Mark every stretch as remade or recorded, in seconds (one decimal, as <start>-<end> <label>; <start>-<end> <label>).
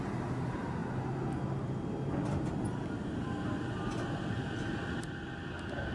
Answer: 0.0-5.9 recorded